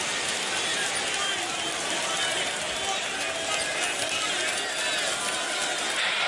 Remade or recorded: recorded